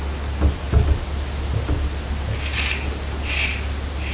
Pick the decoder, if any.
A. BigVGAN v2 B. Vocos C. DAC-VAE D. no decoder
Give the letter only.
D